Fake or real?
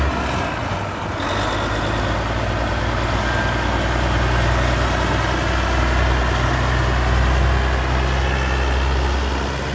real